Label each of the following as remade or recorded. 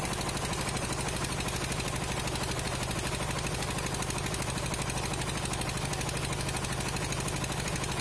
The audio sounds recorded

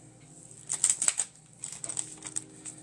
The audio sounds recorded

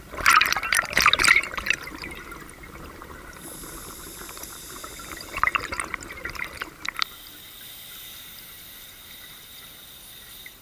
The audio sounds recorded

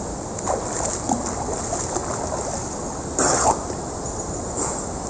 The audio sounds recorded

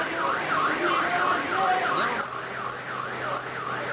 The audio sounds recorded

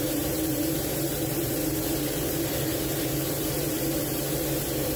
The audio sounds remade